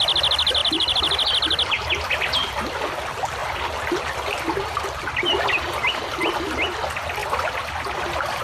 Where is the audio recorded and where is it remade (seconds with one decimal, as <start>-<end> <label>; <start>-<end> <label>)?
0.0-0.6 recorded; 0.6-3.0 remade; 3.0-3.4 recorded; 3.4-5.7 remade; 5.7-7.2 recorded; 7.2-8.4 remade